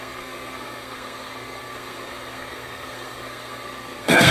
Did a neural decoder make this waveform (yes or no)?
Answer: yes